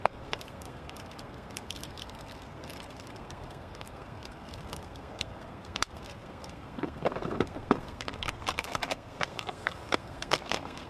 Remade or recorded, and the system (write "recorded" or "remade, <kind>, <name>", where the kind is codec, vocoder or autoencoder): remade, codec, SNAC